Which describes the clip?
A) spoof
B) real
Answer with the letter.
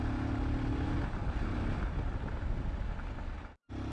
B